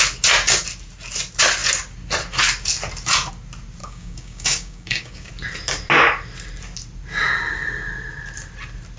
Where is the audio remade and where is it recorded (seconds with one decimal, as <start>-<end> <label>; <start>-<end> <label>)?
0.0-3.8 recorded; 3.8-5.3 remade; 5.3-9.0 recorded

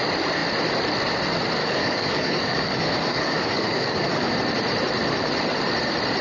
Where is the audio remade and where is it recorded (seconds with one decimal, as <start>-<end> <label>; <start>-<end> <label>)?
0.0-1.6 recorded; 1.6-4.3 remade; 4.3-6.2 recorded

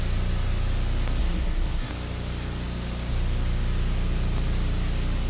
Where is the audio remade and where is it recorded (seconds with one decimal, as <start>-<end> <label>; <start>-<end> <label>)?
0.0-1.2 recorded; 1.2-1.9 remade; 1.9-5.3 recorded

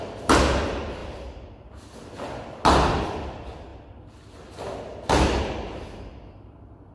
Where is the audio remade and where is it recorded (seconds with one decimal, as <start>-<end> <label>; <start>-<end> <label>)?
0.0-6.9 recorded

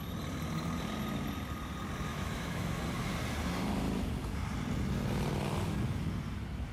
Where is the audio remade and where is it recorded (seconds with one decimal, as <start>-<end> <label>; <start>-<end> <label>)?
0.0-2.1 recorded; 2.1-2.8 remade; 2.8-6.7 recorded

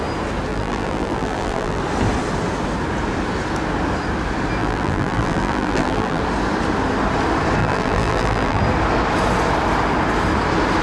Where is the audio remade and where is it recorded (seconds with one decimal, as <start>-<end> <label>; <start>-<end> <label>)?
0.0-0.5 recorded; 0.5-1.8 remade; 1.8-4.6 recorded; 4.6-6.2 remade; 6.2-7.6 recorded; 7.6-8.6 remade; 8.6-10.8 recorded